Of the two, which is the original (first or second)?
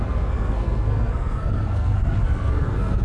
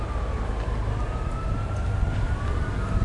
second